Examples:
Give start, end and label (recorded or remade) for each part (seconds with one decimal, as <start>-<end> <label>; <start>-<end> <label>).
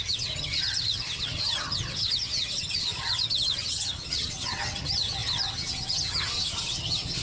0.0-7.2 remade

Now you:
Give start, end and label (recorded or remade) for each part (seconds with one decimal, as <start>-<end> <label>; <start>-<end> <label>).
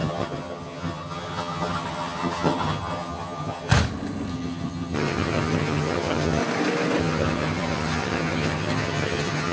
0.0-3.7 remade; 3.7-4.3 recorded; 4.3-6.4 remade; 6.4-7.0 recorded; 7.0-9.5 remade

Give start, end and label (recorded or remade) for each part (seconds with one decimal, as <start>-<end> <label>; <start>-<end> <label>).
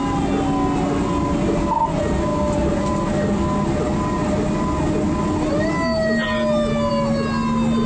0.0-7.9 recorded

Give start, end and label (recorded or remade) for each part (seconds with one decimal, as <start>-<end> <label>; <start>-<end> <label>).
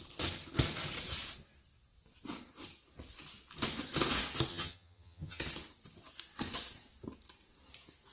0.0-4.5 recorded; 4.5-5.4 remade; 5.4-8.1 recorded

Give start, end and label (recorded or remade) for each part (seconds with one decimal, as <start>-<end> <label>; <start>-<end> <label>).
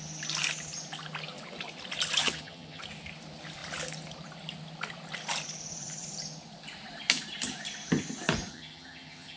0.0-2.2 recorded; 2.2-2.8 remade; 2.8-8.5 recorded; 8.5-9.4 remade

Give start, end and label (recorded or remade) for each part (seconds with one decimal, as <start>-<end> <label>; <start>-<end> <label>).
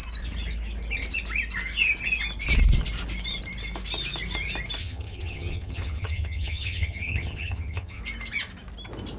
0.0-4.8 recorded; 4.8-8.0 remade; 8.0-9.2 recorded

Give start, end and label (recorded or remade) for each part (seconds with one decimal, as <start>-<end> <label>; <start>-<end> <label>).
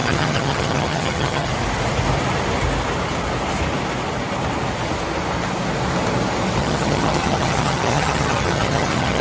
0.0-1.5 remade; 1.5-6.6 recorded; 6.6-9.2 remade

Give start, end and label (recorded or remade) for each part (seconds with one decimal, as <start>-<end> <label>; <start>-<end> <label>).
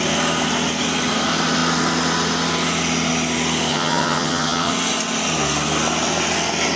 0.0-3.7 recorded; 3.7-4.7 remade; 4.7-6.8 recorded